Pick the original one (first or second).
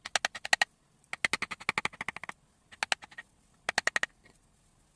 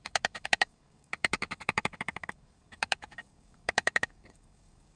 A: first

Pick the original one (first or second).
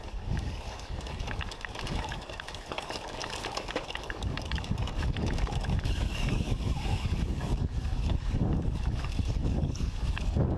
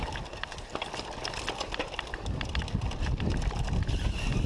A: second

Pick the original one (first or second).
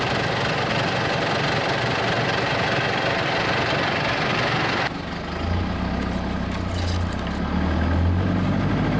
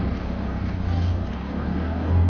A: first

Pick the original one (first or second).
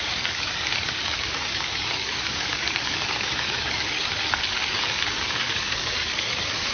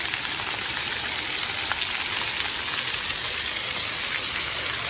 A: second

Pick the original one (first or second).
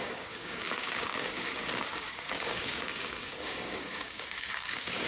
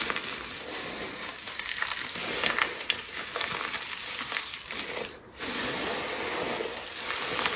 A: second